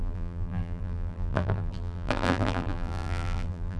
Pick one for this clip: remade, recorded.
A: remade